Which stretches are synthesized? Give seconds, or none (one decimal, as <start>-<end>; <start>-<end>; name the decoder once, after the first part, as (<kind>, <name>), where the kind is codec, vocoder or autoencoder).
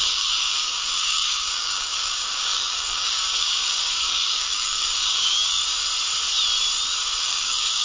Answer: 0.0-5.6 (codec, DAC); 7.2-7.8